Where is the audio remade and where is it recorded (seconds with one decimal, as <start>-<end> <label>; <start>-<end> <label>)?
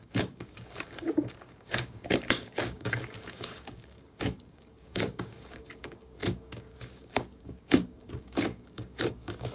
0.0-9.5 remade